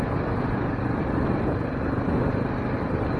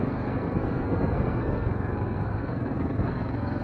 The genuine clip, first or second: first